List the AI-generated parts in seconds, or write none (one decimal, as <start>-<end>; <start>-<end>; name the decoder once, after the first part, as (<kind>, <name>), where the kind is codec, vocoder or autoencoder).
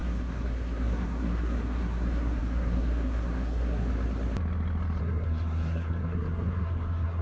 0.0-3.9 (codec, SNAC); 5.0-7.2